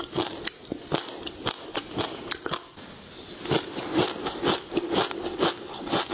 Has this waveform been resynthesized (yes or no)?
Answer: no